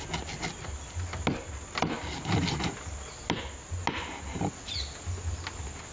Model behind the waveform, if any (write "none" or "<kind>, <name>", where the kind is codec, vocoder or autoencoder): none